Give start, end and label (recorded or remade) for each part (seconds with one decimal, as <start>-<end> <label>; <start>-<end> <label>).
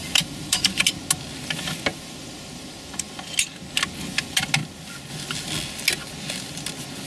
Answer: 0.0-0.9 remade; 0.9-1.9 recorded; 1.9-3.1 remade; 3.1-7.1 recorded